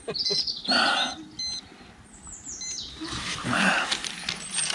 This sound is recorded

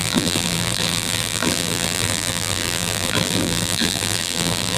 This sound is remade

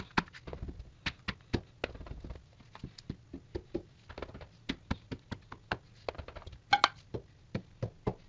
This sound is recorded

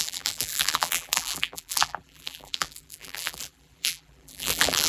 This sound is remade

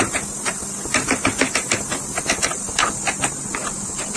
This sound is recorded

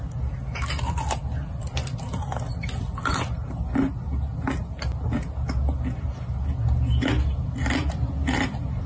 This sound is recorded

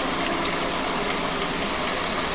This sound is recorded